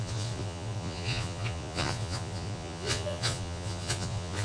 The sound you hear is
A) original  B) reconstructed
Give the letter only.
B